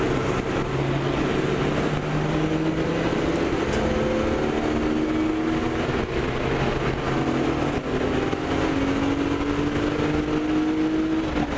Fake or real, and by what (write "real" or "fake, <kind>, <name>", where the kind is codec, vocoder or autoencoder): real